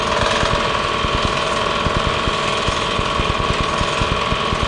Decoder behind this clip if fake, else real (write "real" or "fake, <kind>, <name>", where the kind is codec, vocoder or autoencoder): real